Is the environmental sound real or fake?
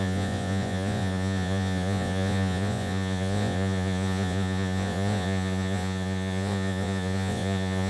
fake